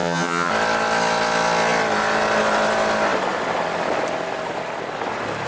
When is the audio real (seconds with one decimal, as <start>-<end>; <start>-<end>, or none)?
0.5-5.5